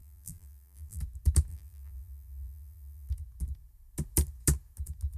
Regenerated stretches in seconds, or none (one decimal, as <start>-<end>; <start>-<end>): 0.0-1.0; 1.5-3.1